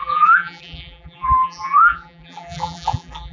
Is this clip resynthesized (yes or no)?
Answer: yes